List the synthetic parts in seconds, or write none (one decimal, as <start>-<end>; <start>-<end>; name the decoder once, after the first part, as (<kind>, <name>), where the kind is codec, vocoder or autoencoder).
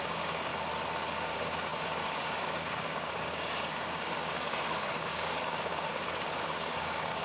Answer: 0.0-0.5 (codec, DAC); 1.1-7.2